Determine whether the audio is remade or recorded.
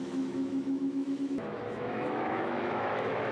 remade